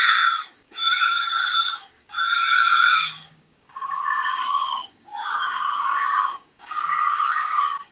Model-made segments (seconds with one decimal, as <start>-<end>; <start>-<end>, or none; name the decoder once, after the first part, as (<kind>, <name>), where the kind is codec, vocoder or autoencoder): 0.0-7.9 (codec, DAC)